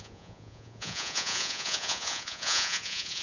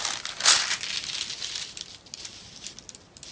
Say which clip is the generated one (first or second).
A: first